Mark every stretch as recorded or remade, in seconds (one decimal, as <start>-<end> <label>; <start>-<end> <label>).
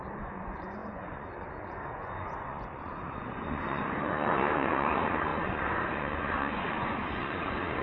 0.0-7.8 remade